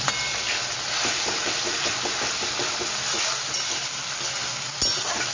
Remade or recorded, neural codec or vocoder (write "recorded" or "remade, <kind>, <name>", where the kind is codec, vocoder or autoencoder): recorded